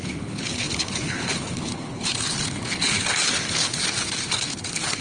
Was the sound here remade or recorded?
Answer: remade